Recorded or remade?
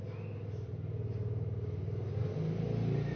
recorded